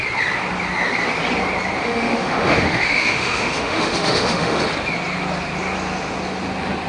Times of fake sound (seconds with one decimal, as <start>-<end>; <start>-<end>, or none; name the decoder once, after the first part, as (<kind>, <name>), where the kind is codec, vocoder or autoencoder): 1.8-4.6 (autoencoder, DAC-VAE)